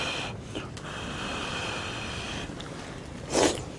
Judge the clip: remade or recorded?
recorded